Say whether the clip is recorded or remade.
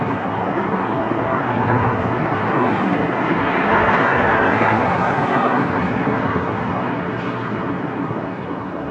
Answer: remade